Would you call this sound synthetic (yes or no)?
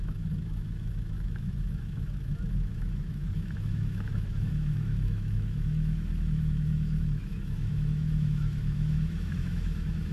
yes